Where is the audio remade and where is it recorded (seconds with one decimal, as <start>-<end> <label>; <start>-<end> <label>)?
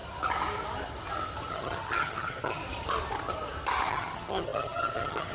0.0-1.5 recorded; 1.5-2.6 remade; 2.6-3.9 recorded; 3.9-5.3 remade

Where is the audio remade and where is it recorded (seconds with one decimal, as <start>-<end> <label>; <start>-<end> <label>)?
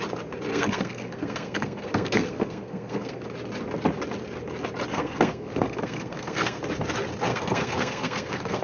0.0-0.5 recorded; 0.5-3.2 remade; 3.2-4.9 recorded; 4.9-6.6 remade; 6.6-7.3 recorded; 7.3-8.6 remade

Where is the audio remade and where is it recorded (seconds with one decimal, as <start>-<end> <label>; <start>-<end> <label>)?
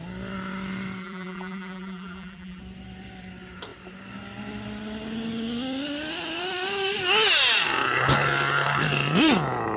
0.0-1.0 recorded; 1.0-2.6 remade; 2.6-9.8 recorded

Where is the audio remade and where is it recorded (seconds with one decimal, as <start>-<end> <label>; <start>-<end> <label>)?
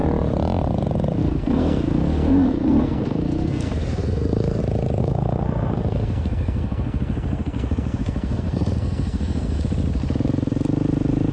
0.0-1.2 recorded; 1.2-4.6 remade; 4.6-5.0 recorded; 5.0-9.6 remade; 9.6-11.3 recorded